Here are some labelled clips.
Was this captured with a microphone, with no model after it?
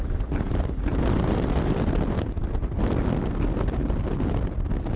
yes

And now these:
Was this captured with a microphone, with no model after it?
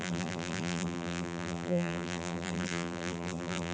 no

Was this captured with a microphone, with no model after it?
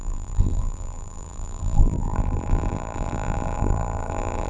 no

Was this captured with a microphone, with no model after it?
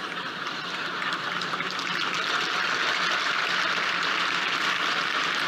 no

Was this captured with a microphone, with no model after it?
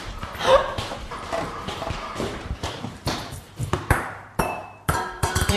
no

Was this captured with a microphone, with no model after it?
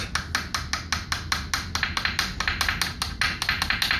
yes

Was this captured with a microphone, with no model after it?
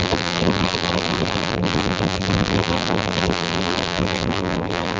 no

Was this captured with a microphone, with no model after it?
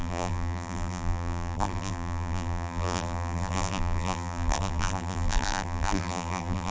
no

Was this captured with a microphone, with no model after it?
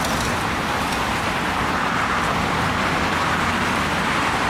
no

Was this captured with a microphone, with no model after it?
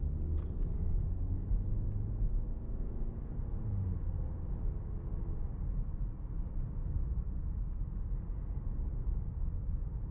yes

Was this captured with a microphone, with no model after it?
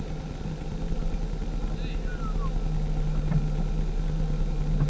yes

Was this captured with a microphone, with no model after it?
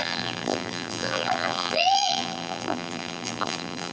no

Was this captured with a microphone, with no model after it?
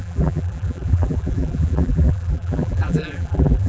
no